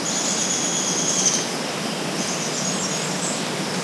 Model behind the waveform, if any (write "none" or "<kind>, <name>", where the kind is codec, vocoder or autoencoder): none